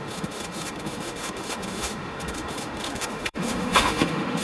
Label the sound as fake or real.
fake